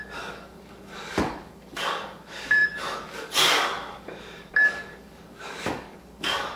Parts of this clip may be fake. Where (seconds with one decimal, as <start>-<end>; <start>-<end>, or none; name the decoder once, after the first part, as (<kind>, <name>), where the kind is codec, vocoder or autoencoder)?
0.0-6.6 (codec, DAC)